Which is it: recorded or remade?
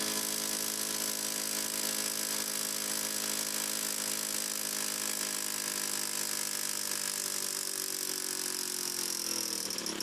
recorded